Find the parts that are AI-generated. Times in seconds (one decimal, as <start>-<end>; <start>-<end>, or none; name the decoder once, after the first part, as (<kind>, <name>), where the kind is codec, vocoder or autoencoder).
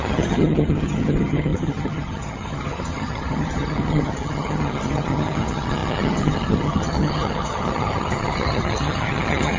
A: 0.0-9.6 (vocoder, HiFi-GAN)